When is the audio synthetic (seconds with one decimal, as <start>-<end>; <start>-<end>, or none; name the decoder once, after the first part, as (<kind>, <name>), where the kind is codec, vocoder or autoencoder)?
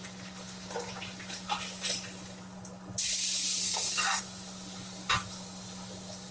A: 3.6-4.2 (codec, SNAC)